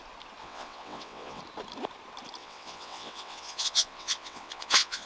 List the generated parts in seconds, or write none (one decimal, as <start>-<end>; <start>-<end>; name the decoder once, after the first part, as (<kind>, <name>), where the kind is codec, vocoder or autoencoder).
0.4-1.4 (vocoder, WaveNeXt); 2.4-5.1